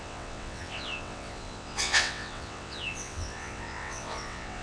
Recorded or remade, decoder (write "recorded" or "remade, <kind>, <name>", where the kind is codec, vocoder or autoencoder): remade, vocoder, WaveNeXt